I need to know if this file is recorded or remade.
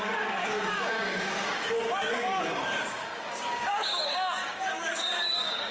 remade